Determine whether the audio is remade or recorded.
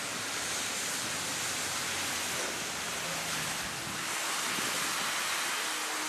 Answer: recorded